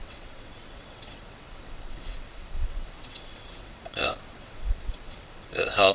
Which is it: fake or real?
fake